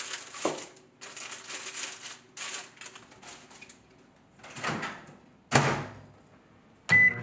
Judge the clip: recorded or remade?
recorded